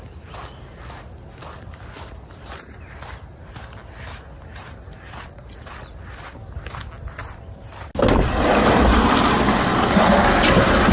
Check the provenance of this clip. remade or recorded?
recorded